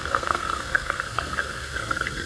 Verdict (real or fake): fake